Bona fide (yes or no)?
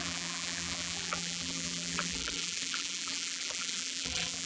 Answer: no